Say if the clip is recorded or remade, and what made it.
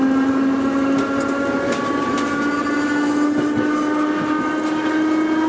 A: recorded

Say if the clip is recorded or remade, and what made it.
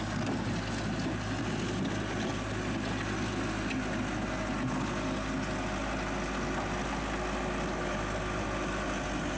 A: recorded